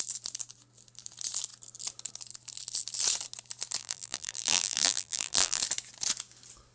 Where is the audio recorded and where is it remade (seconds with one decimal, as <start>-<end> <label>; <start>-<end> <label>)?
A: 0.0-3.8 recorded; 3.8-5.6 remade; 5.6-6.7 recorded